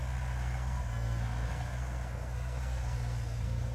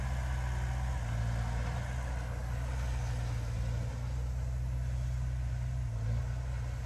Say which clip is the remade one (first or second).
first